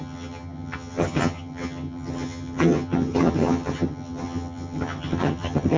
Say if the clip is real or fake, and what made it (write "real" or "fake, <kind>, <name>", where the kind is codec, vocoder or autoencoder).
fake, vocoder, HiFi-GAN